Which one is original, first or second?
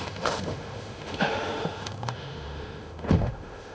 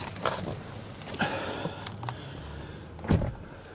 second